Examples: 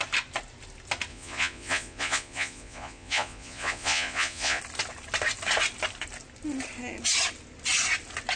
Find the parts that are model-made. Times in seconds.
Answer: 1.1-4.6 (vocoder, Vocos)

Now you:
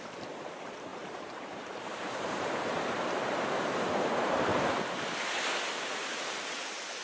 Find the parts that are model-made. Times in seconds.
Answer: 0.0-4.5 (vocoder, BigVGAN v2); 6.2-7.0

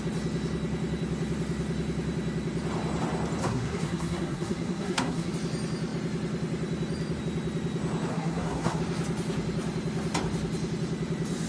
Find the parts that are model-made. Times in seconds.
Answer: 3.4-5.3 (codec, SNAC); 8.1-8.8

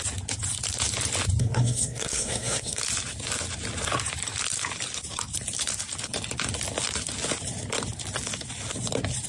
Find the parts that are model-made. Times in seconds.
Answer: 1.4-2.8 (codec, SNAC)

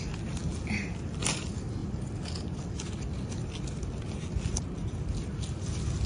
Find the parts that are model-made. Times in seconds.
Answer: none

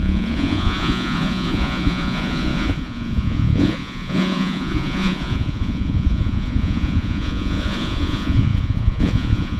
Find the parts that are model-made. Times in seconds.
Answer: 0.0-9.6 (vocoder, Vocos)

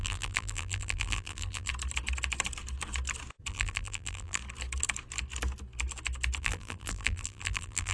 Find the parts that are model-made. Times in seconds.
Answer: 0.0-1.7 (vocoder, BigVGAN v2); 3.5-4.4; 6.4-7.9

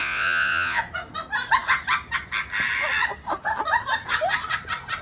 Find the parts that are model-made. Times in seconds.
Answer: 0.0-0.8 (vocoder, Vocos)